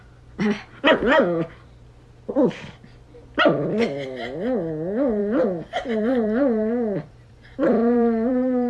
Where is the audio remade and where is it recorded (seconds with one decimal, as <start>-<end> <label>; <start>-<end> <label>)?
0.0-5.2 recorded; 5.2-8.7 remade